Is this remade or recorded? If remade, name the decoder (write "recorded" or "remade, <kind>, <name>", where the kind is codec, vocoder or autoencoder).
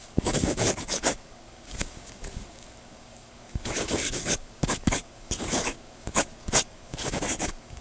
remade, codec, DAC